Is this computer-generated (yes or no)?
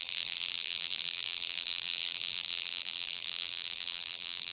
yes